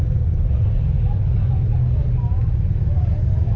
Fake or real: real